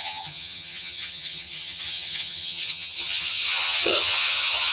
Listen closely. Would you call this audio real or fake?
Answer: fake